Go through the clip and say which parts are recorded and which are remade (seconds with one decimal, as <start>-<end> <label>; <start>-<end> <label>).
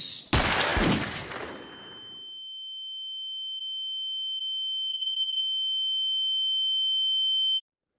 0.0-4.9 recorded; 4.9-5.4 remade; 5.4-8.0 recorded